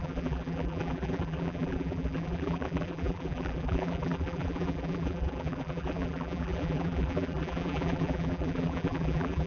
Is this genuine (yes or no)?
no